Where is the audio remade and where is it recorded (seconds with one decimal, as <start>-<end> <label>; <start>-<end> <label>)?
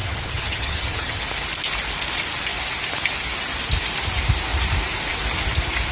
0.0-1.2 remade; 1.2-5.9 recorded